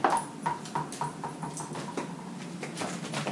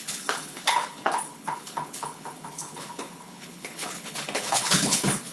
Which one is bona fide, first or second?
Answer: first